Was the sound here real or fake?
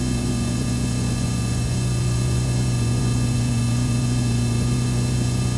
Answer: fake